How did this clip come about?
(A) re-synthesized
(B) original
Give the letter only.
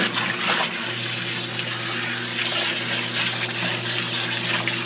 B